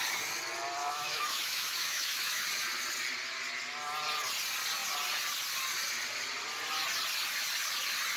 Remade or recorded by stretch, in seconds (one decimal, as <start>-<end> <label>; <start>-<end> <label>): 0.0-0.8 recorded; 0.8-2.4 remade; 2.4-8.2 recorded